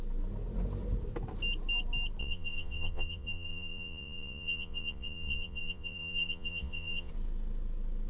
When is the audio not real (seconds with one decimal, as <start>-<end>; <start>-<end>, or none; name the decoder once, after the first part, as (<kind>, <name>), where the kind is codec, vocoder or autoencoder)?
2.2-7.1 (vocoder, Vocos)